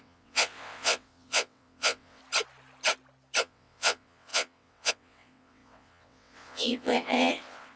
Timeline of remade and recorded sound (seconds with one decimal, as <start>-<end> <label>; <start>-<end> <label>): 0.0-2.2 remade; 2.2-3.4 recorded; 3.4-7.8 remade